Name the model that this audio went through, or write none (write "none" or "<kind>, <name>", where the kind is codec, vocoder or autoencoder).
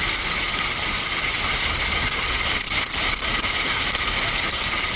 none